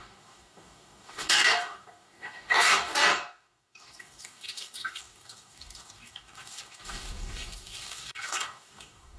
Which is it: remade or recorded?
remade